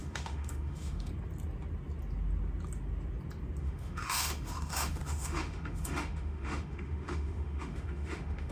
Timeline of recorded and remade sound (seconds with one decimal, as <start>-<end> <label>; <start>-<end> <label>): 0.0-1.1 remade; 1.1-3.6 recorded; 3.6-8.5 remade